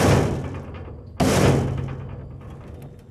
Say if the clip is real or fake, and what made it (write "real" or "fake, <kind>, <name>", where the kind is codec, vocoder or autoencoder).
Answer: real